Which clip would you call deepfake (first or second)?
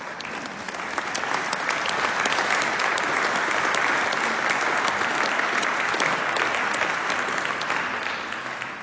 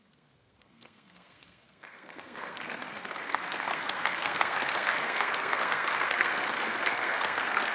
second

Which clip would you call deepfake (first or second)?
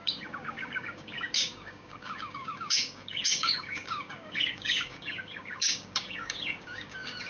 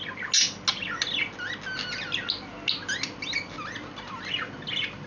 first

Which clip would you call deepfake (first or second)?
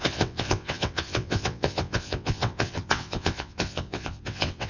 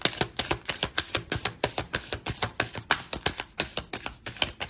first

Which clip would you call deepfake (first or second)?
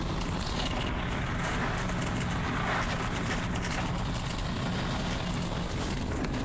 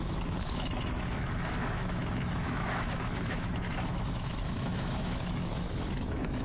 second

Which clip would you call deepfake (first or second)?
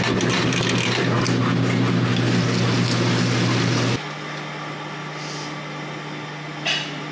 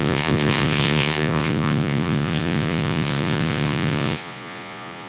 second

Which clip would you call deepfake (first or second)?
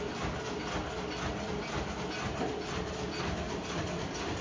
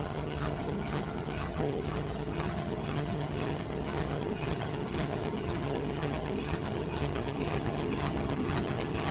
second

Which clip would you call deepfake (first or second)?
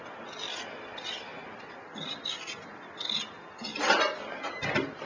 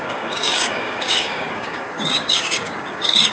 second